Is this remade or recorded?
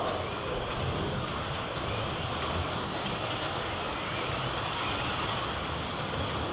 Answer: recorded